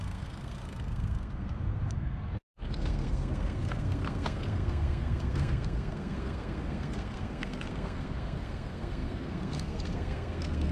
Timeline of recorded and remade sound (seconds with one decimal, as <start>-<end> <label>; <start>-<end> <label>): 0.0-10.7 remade